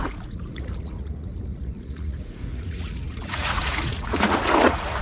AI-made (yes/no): yes